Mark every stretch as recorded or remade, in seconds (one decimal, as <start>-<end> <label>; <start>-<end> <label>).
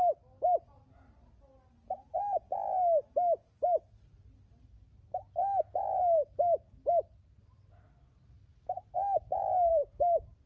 0.0-9.7 recorded; 9.7-10.5 remade